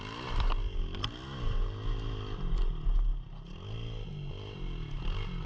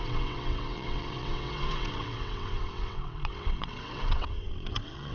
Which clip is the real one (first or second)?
first